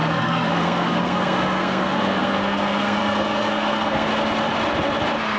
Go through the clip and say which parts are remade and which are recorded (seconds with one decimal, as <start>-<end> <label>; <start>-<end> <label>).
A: 0.0-4.1 remade; 4.1-5.4 recorded